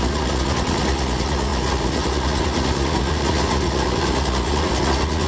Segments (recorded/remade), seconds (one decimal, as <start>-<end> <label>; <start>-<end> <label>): 0.0-5.3 remade